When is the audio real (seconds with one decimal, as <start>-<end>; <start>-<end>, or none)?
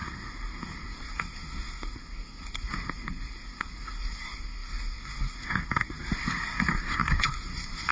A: none